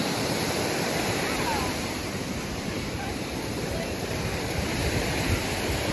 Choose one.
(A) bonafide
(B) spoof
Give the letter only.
B